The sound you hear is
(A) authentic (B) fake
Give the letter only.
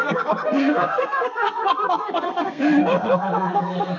B